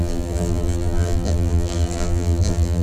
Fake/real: fake